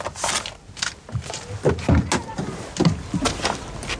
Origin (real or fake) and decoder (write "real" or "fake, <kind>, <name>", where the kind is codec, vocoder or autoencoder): real